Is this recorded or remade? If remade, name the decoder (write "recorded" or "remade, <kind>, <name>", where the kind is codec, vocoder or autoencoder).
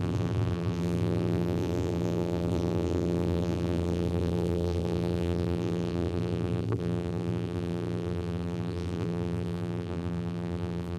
remade, vocoder, BigVGAN v2